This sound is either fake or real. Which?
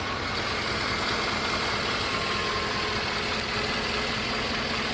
real